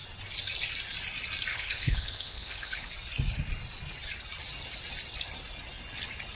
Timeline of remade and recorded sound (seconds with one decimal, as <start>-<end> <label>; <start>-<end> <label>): 0.0-1.5 recorded; 1.5-2.9 remade; 2.9-6.3 recorded